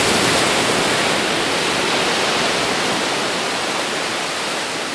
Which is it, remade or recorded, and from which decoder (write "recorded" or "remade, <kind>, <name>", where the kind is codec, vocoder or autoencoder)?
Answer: recorded